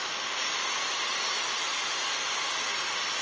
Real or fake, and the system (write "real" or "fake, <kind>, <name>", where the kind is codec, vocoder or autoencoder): real